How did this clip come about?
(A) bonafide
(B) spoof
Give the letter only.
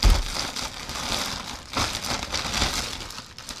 A